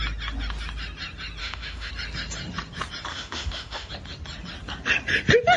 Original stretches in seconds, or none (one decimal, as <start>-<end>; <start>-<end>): 0.0-1.4; 1.9-3.1; 3.9-5.6